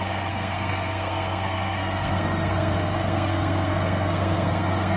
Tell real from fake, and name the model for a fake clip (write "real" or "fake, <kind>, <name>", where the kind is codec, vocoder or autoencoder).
fake, codec, SNAC